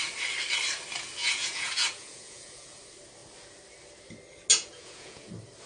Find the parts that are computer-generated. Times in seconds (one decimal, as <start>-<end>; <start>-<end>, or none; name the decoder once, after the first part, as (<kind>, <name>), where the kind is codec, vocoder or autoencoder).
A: 1.2-2.8 (vocoder, Vocos); 4.5-5.3